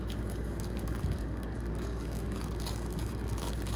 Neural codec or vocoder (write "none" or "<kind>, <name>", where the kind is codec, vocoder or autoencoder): codec, DAC